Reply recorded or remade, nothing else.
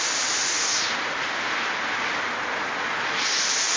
recorded